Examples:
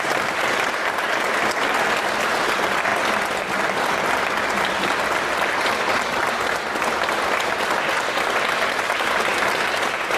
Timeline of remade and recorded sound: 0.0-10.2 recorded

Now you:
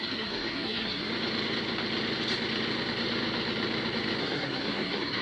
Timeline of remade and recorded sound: 0.0-1.1 remade; 1.1-4.2 recorded; 4.2-5.2 remade

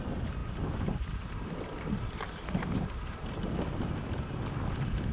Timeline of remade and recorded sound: 0.0-5.1 recorded

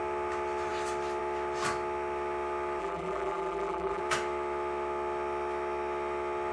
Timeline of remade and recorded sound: 0.0-2.8 recorded; 2.8-4.0 remade; 4.0-6.5 recorded